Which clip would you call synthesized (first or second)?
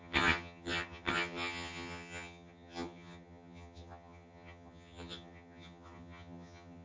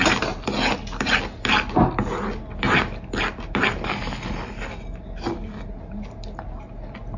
first